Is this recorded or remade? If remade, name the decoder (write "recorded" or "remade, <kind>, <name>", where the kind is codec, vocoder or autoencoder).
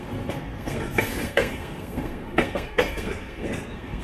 remade, codec, SNAC